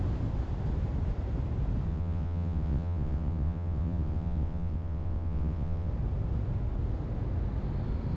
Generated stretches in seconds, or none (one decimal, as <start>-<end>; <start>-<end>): 1.9-5.9